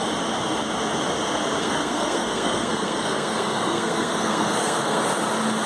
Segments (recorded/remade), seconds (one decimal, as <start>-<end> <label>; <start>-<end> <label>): 0.0-1.6 recorded; 1.6-5.0 remade; 5.0-5.7 recorded